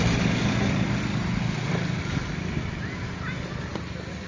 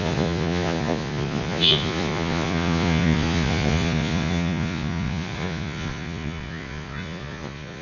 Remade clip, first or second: second